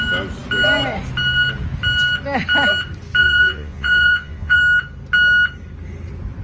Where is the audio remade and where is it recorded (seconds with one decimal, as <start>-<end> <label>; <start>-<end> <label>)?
0.0-3.2 recorded; 3.2-4.6 remade; 4.6-6.4 recorded